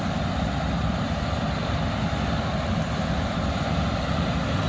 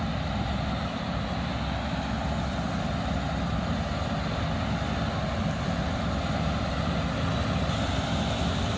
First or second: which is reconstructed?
first